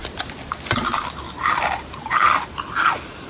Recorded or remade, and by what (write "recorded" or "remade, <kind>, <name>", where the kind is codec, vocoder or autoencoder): recorded